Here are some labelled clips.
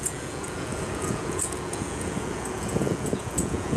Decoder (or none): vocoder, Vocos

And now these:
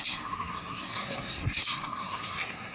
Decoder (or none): codec, SNAC